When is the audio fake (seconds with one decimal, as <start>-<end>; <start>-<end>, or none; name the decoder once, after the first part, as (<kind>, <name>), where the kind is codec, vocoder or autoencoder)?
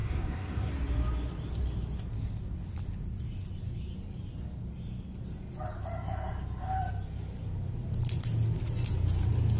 0.0-0.7 (codec, SNAC)